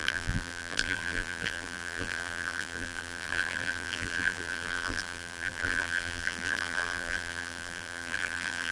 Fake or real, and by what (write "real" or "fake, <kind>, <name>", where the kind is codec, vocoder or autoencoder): fake, vocoder, BigVGAN v2